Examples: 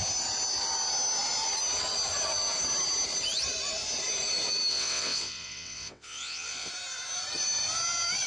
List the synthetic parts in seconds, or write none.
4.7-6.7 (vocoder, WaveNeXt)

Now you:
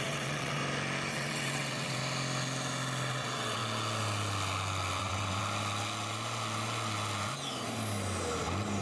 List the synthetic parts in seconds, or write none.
0.0-0.6 (vocoder, WaveNeXt); 1.1-2.0; 3.1-3.6; 5.0-5.4

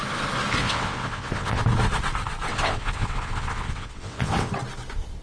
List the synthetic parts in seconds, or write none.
0.6-1.6 (vocoder, WaveNeXt); 2.5-4.5

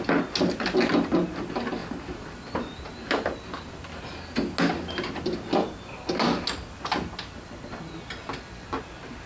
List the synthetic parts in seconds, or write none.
none